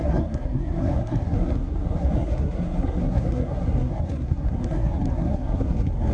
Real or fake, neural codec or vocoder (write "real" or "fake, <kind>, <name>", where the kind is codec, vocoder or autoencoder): fake, codec, SNAC